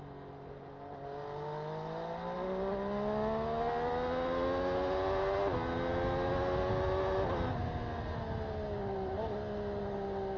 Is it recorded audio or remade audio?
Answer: recorded